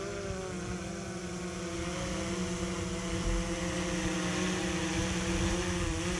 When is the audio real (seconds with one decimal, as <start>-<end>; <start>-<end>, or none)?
0.0-6.2